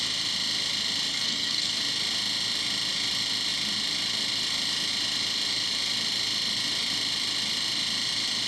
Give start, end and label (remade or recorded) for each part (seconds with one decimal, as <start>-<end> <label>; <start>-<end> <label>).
0.0-1.1 recorded; 1.1-1.8 remade; 1.8-8.5 recorded